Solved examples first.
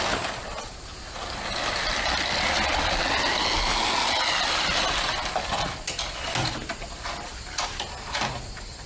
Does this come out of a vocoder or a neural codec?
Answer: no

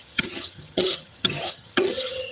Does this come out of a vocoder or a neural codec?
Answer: yes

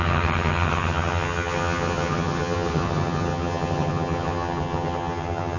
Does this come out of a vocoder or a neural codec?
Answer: yes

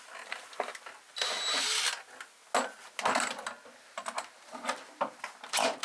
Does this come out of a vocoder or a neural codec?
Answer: no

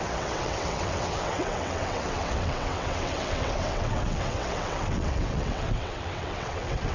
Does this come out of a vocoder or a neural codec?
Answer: yes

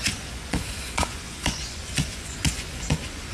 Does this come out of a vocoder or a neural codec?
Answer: yes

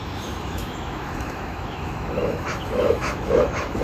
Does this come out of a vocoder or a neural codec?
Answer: yes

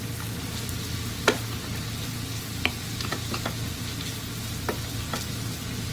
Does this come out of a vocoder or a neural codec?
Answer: no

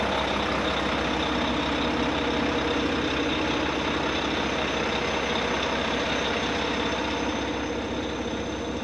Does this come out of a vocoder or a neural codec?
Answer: no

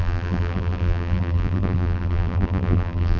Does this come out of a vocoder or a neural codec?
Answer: yes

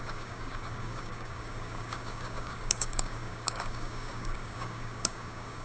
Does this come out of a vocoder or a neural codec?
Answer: yes